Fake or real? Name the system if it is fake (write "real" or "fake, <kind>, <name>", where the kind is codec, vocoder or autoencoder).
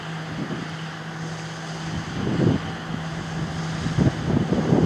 real